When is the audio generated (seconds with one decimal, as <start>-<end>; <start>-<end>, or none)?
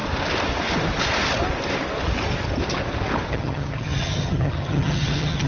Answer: 3.3-5.5